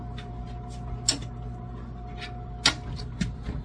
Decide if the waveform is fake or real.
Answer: real